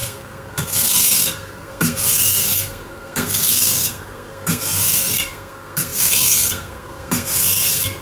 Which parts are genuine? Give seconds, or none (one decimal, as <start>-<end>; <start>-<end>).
none